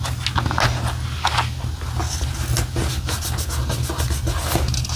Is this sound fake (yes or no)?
no